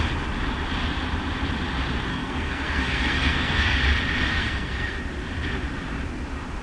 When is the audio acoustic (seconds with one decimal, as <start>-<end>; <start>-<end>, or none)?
0.0-2.1; 3.8-4.3; 5.0-6.6